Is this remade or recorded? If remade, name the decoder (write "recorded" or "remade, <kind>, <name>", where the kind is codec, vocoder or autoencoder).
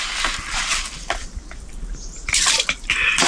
recorded